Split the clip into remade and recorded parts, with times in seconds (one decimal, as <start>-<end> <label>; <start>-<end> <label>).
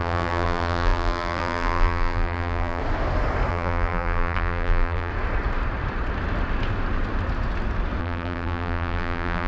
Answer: 0.0-2.8 remade; 2.8-3.5 recorded; 3.5-5.1 remade; 5.1-8.0 recorded; 8.0-9.5 remade